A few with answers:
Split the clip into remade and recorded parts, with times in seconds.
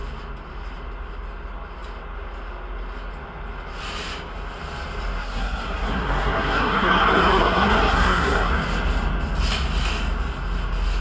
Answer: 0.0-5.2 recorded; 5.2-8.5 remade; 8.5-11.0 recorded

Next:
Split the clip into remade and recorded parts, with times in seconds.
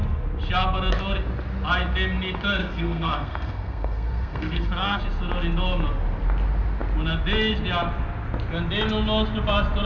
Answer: 0.0-2.6 recorded; 2.6-5.0 remade; 5.0-9.9 recorded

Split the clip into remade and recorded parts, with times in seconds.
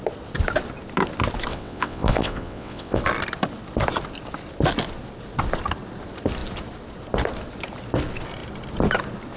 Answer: 0.0-1.5 recorded; 1.5-3.0 remade; 3.0-9.4 recorded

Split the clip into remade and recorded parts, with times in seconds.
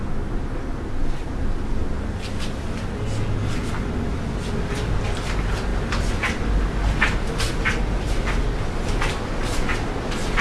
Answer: 0.0-10.4 recorded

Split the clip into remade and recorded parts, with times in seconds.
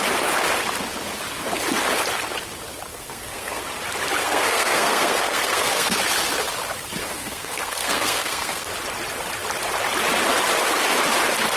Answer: 0.0-2.9 recorded; 2.9-3.6 remade; 3.6-4.2 recorded; 4.2-6.0 remade; 6.0-7.0 recorded; 7.0-8.7 remade; 8.7-11.6 recorded